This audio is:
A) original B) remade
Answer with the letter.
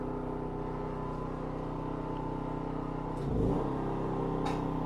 A